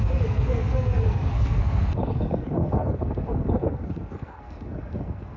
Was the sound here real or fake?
fake